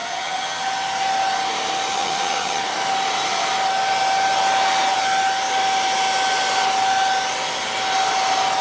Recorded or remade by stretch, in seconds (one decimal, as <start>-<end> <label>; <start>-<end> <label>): 0.0-0.6 remade; 0.6-1.9 recorded; 1.9-2.6 remade; 2.6-8.6 recorded